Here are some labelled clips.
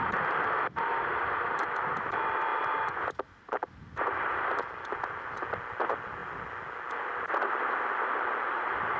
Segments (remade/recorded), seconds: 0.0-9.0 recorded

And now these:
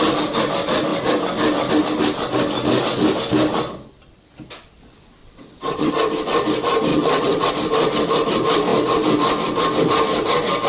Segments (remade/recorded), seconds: 0.0-5.2 recorded; 5.2-5.9 remade; 5.9-6.9 recorded; 6.9-7.5 remade; 7.5-10.7 recorded